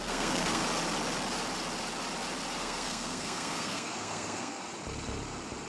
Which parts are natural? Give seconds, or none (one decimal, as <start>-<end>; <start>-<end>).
0.6-2.6; 4.6-5.7